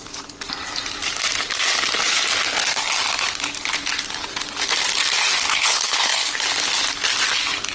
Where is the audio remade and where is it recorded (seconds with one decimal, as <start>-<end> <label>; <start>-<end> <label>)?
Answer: 0.0-5.5 recorded; 5.5-6.3 remade; 6.3-7.7 recorded